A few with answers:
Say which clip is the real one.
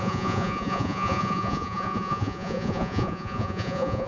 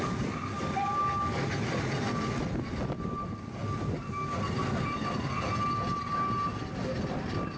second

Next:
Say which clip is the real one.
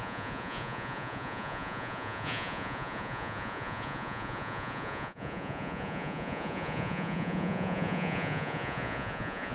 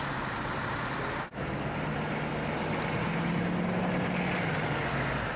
second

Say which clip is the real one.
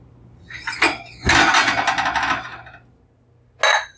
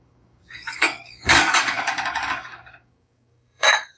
first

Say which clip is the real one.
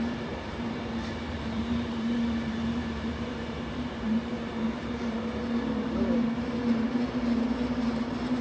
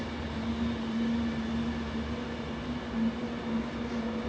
second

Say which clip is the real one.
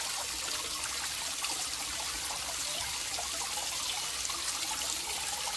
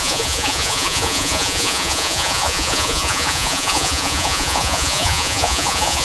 first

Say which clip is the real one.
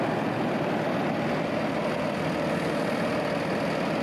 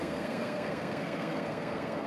first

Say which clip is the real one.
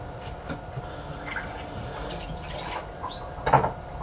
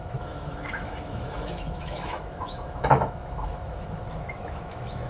first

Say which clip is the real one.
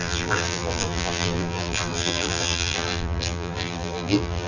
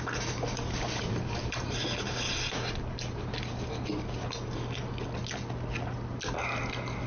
second